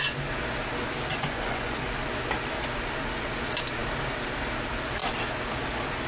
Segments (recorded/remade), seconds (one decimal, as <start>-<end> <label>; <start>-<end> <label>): 0.0-1.1 recorded; 1.1-1.9 remade; 1.9-6.1 recorded